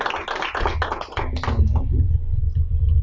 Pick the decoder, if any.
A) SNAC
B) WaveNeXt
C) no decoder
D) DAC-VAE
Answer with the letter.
C